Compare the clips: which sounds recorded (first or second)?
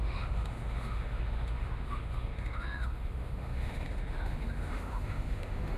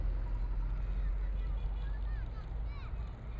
second